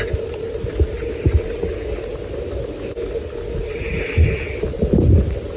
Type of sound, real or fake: real